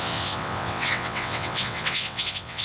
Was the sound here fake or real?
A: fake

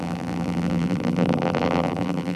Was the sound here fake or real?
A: fake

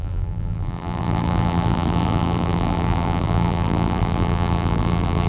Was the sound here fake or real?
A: fake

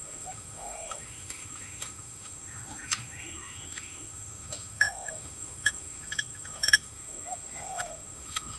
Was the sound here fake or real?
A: fake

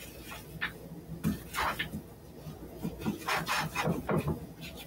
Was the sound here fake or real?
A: real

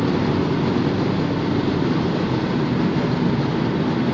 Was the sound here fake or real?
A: real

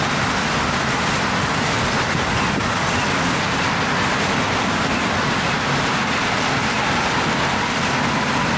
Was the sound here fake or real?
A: real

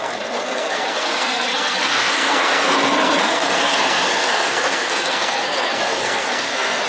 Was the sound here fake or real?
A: fake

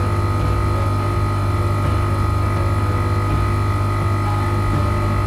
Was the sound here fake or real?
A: real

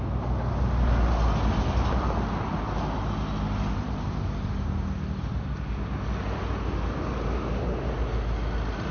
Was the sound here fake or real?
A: real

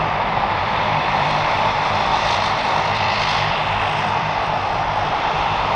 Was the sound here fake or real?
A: fake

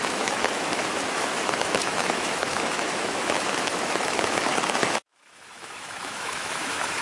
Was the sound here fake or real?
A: fake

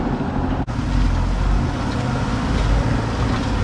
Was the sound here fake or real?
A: real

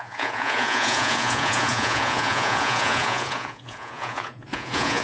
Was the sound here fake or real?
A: fake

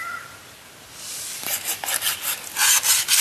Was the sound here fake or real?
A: real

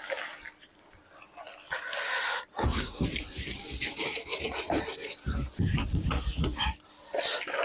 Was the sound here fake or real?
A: real